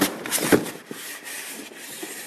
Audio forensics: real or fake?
real